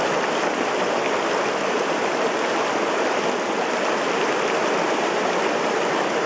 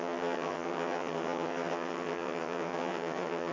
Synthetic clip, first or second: second